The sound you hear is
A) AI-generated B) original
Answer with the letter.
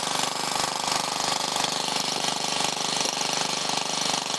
A